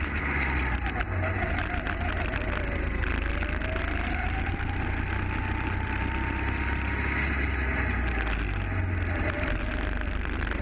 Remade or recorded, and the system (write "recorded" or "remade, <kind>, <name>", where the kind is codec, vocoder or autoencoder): recorded